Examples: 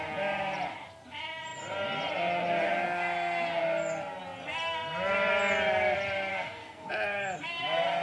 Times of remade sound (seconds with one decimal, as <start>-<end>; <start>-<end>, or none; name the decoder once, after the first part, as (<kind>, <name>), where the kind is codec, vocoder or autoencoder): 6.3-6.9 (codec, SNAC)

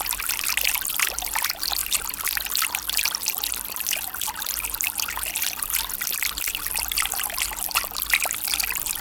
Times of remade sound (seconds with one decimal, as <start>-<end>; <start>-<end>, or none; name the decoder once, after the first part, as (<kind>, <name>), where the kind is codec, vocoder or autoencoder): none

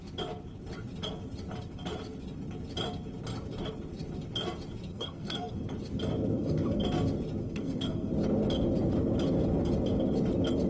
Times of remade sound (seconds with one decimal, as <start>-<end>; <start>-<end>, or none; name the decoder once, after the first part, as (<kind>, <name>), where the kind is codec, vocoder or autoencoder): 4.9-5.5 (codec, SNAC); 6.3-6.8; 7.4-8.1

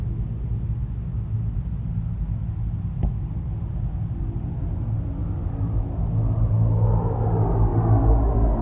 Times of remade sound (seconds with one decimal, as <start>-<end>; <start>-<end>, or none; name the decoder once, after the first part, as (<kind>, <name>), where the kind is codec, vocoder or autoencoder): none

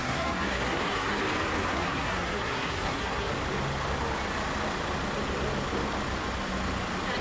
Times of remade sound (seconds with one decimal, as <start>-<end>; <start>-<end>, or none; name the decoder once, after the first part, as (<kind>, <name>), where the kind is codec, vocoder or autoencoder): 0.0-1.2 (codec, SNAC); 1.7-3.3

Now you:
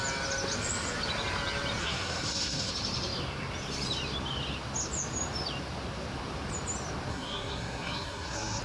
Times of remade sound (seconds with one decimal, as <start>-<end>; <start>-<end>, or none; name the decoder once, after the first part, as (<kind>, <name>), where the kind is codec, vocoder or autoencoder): 1.8-2.7 (codec, SNAC); 7.1-8.6